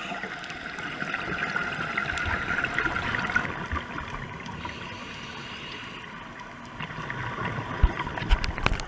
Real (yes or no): yes